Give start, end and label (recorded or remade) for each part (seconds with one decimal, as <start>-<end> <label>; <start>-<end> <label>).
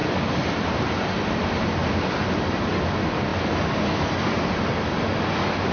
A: 0.0-5.7 recorded